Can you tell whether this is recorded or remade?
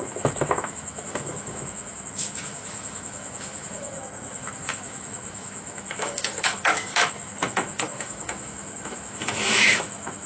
remade